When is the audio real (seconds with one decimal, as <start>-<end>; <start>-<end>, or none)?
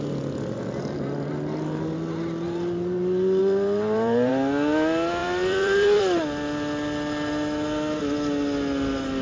0.0-3.4; 4.3-5.2; 6.0-9.2